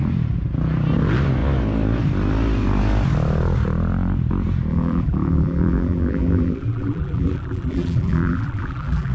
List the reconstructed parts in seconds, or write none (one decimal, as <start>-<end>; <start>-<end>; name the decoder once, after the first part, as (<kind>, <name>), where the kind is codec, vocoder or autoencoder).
4.7-9.1 (vocoder, BigVGAN v2)